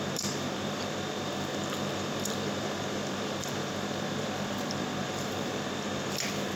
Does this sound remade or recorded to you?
remade